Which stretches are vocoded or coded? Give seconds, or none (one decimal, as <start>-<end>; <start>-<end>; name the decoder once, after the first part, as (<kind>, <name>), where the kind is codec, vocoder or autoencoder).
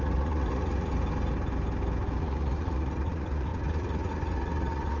0.0-0.9 (vocoder, Vocos); 2.2-5.0